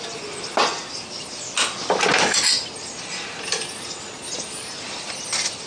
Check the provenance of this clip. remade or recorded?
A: recorded